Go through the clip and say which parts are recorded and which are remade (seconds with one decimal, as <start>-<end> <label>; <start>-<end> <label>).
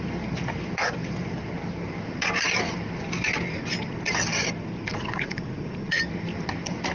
0.0-4.9 recorded; 4.9-6.0 remade; 6.0-6.9 recorded